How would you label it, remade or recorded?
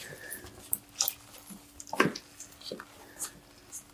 recorded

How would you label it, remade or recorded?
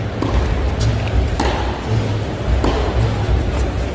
recorded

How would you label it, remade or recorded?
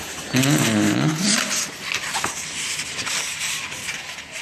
recorded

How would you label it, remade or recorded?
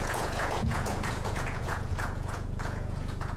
remade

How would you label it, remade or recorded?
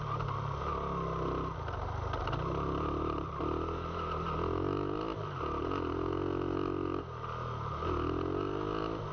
recorded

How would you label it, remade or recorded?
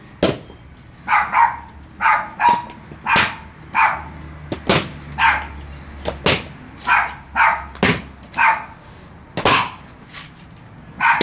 recorded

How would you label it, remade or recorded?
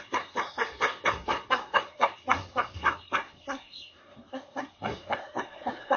remade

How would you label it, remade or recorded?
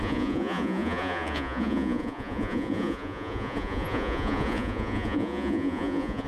remade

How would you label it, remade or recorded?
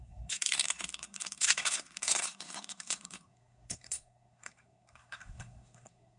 remade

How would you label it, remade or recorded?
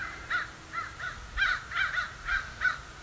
recorded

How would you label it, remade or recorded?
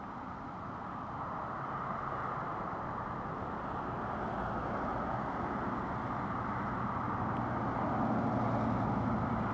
recorded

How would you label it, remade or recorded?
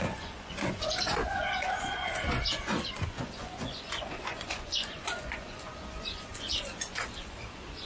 remade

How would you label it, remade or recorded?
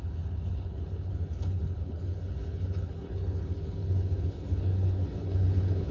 remade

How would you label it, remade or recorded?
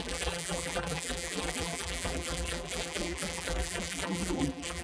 remade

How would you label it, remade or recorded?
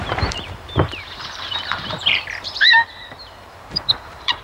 remade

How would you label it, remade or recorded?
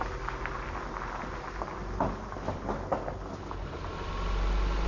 recorded